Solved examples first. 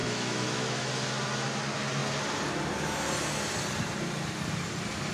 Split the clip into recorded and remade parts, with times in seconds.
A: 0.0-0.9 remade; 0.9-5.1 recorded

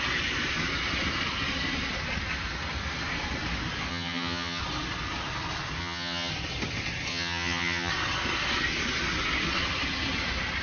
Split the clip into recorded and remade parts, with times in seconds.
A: 0.0-3.9 recorded; 3.9-4.6 remade; 4.6-5.8 recorded; 5.8-6.3 remade; 6.3-7.1 recorded; 7.1-7.9 remade; 7.9-10.6 recorded

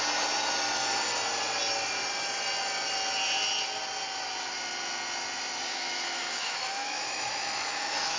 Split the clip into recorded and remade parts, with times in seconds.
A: 0.0-5.7 recorded; 5.7-8.2 remade

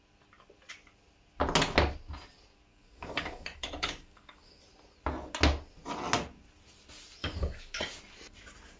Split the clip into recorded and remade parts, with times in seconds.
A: 0.0-2.7 recorded; 2.7-4.6 remade; 4.6-7.2 recorded; 7.2-7.8 remade; 7.8-8.8 recorded

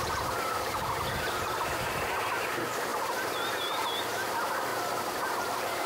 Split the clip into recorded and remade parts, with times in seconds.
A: 0.0-4.7 remade; 4.7-5.4 recorded; 5.4-5.9 remade

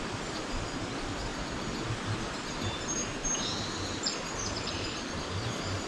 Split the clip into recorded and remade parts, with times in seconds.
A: 0.0-5.9 recorded

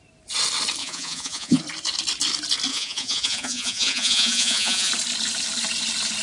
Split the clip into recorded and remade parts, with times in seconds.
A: 0.0-0.8 recorded; 0.8-1.6 remade; 1.6-2.7 recorded; 2.7-4.9 remade; 4.9-6.2 recorded

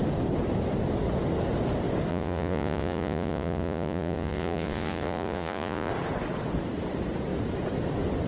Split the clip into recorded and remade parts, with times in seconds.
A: 0.0-2.1 recorded; 2.1-5.9 remade; 5.9-8.3 recorded